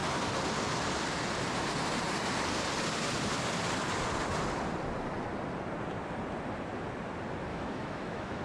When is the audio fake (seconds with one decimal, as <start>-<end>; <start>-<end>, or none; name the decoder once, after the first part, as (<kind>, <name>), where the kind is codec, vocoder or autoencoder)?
7.5-8.4 (autoencoder, DAC-VAE)